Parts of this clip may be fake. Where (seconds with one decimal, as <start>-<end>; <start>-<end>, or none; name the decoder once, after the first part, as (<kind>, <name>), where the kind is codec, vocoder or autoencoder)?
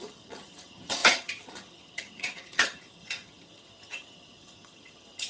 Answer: 0.0-5.3 (vocoder, HiFi-GAN)